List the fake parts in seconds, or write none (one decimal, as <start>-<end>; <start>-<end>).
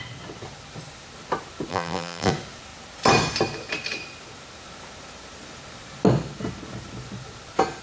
1.7-2.3